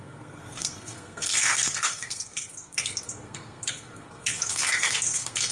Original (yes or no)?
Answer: no